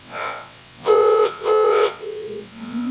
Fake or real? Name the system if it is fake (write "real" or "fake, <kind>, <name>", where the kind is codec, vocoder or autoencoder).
fake, vocoder, WaveNeXt